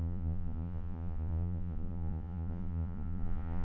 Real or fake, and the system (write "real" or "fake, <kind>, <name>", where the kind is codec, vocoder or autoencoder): fake, vocoder, Vocos